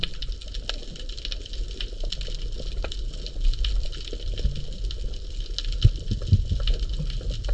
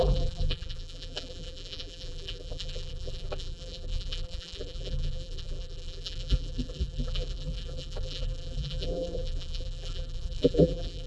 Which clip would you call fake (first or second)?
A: second